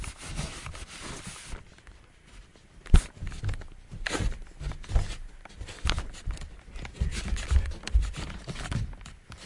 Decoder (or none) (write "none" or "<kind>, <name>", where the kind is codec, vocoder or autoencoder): none